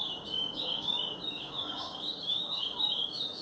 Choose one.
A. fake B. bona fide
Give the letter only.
A